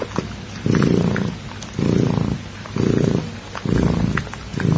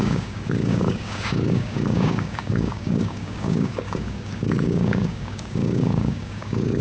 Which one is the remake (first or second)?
second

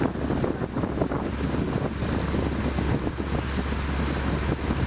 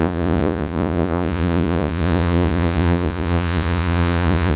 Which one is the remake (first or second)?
second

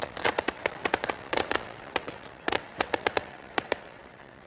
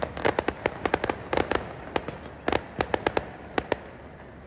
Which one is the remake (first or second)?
first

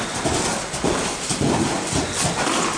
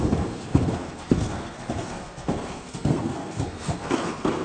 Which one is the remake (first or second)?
second